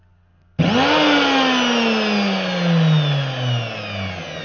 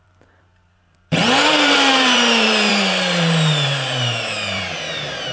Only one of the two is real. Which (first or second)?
first